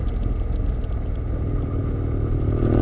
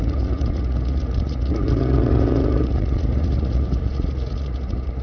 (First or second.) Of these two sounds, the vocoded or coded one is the second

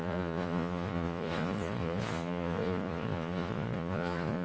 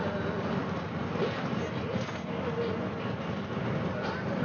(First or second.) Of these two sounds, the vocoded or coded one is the first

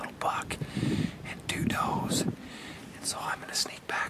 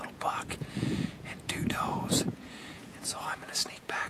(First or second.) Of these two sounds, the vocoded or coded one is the second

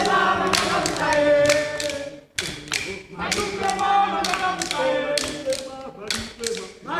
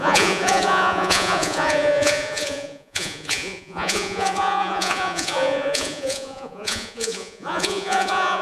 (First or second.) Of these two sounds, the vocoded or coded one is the second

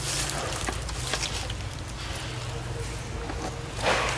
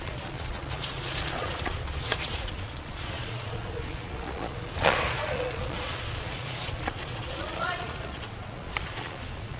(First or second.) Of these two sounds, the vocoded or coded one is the second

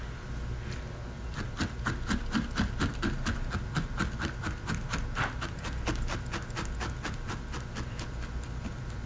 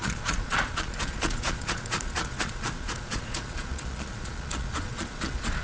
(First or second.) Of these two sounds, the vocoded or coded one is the second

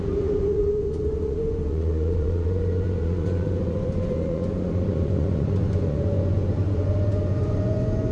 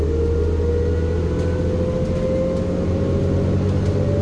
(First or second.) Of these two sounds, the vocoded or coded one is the first